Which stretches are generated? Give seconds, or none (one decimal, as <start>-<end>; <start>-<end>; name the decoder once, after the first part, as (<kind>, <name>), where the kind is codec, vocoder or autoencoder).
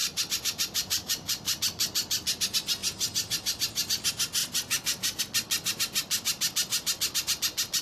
0.0-1.6 (vocoder, BigVGAN v2); 4.4-5.2